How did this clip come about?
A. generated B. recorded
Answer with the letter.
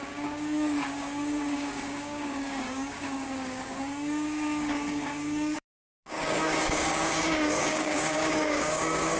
A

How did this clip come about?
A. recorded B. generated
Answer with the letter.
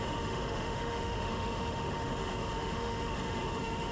B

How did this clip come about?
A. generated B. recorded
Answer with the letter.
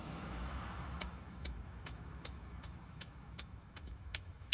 A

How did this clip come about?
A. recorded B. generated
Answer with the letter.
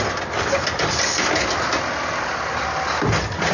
A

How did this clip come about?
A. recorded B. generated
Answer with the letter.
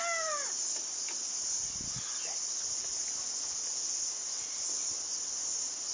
A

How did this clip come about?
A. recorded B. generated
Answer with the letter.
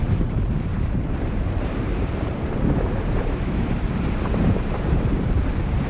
B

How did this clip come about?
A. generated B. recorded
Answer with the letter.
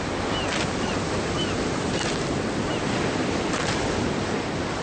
B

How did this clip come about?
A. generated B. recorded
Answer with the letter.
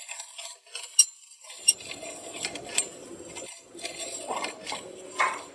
B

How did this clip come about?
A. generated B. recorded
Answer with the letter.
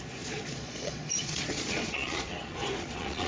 A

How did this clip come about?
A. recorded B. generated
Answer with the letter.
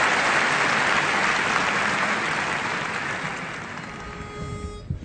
A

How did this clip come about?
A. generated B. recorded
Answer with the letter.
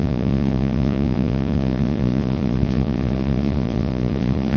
A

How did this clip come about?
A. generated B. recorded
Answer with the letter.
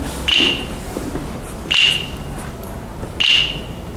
B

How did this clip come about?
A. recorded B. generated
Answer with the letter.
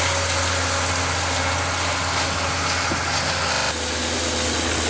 A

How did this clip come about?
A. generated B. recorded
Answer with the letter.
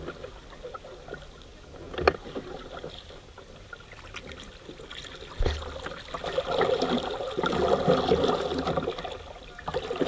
B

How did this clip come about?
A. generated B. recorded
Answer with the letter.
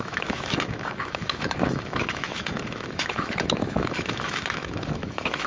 A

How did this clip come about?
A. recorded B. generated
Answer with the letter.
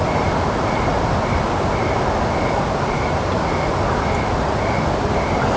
A